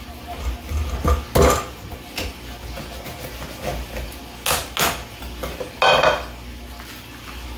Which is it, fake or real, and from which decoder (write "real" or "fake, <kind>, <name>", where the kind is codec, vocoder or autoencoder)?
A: real